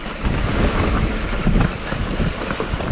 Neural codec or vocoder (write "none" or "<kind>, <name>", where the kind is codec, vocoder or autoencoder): vocoder, BigVGAN v2